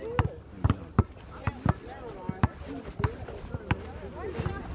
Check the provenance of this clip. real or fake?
real